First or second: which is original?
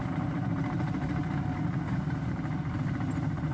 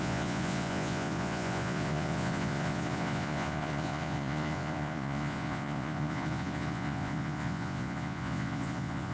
first